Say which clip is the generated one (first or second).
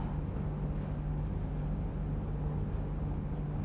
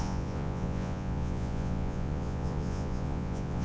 second